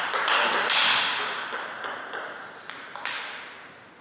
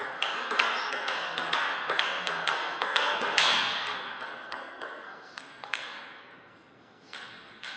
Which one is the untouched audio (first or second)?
first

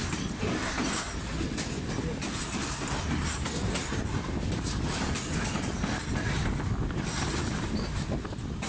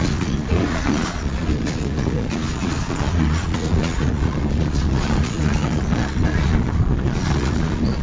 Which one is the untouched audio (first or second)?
first